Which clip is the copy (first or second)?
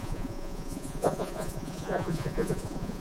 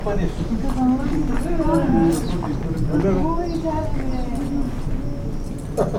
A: first